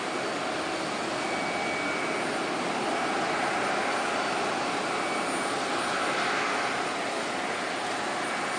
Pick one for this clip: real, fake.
real